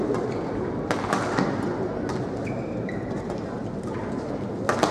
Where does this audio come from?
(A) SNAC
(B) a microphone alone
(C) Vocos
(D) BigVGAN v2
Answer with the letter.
B